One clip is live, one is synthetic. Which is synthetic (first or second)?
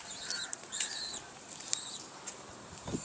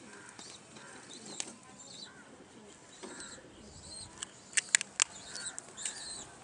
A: first